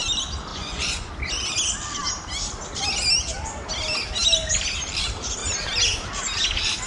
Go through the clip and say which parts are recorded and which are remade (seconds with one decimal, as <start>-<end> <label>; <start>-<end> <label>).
0.0-0.5 recorded; 0.5-1.1 remade; 1.1-6.9 recorded